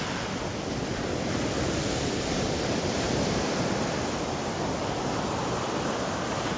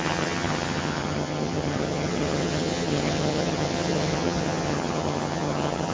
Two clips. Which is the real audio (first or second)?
first